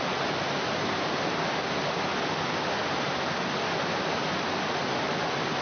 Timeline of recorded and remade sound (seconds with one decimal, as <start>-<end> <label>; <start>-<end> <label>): 0.0-5.6 recorded